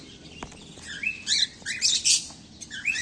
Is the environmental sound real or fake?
real